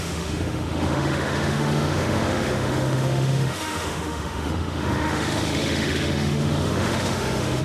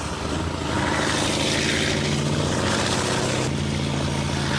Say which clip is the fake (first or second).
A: first